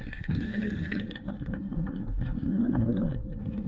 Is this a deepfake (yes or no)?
yes